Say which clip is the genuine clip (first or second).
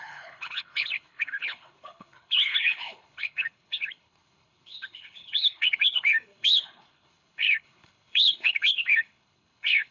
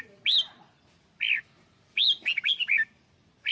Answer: second